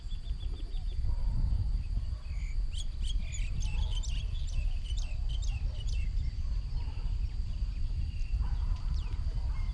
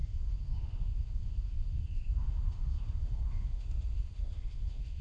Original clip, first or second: first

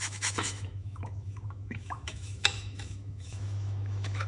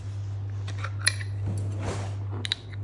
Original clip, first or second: second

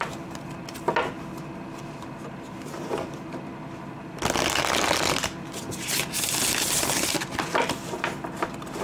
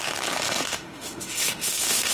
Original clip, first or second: first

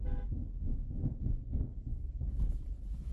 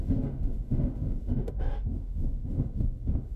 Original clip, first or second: first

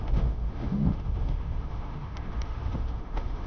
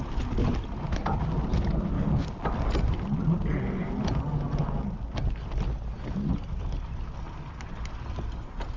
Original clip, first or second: second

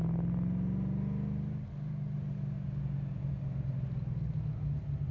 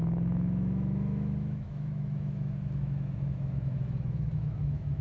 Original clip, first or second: first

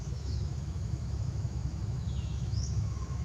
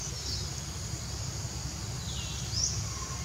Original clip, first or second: second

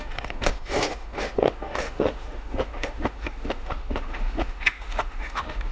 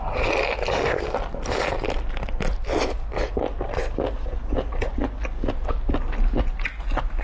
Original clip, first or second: second